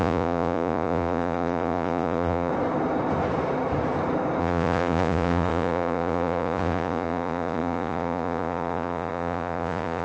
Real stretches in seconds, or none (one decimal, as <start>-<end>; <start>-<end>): 2.5-4.4